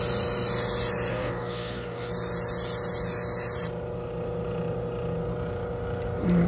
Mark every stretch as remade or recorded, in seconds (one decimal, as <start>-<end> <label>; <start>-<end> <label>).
0.0-1.1 recorded; 1.1-2.1 remade; 2.1-6.5 recorded